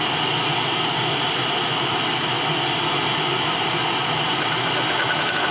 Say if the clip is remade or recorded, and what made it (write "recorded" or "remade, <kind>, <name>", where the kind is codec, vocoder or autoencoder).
recorded